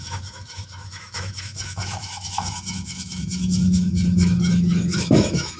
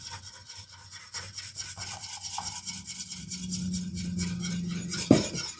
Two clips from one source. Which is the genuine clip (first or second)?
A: second